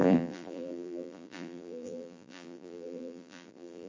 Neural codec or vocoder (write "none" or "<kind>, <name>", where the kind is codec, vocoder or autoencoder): vocoder, BigVGAN v2